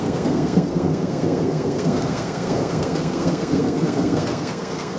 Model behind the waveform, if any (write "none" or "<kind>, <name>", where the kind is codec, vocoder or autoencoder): codec, SNAC